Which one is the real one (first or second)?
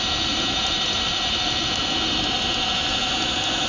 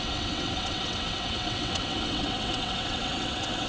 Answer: first